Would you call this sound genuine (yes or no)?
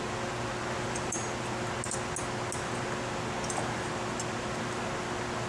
yes